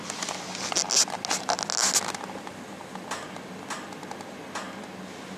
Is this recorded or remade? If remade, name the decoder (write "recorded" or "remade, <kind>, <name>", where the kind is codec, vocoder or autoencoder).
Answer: recorded